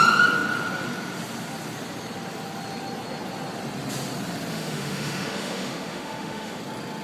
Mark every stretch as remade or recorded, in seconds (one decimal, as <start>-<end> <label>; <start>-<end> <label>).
0.0-4.5 recorded; 4.5-6.6 remade; 6.6-7.0 recorded